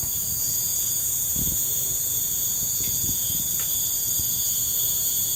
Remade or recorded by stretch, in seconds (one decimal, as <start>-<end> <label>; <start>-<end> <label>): 0.0-5.4 remade